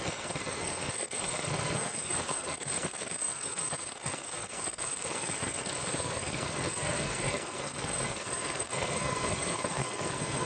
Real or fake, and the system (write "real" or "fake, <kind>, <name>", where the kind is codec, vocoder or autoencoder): fake, codec, SNAC